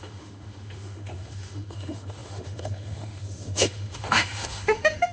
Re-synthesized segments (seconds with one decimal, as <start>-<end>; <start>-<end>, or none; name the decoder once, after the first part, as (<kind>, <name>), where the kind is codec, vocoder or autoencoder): 0.0-5.1 (autoencoder, DAC-VAE)